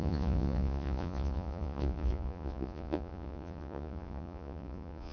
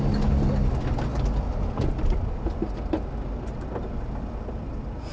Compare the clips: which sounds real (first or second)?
second